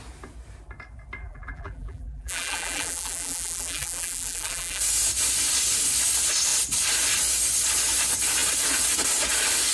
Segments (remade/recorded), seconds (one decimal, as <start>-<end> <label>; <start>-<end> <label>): 0.0-1.2 recorded; 1.2-4.8 remade; 4.8-9.7 recorded